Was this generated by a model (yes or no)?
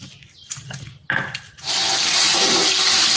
no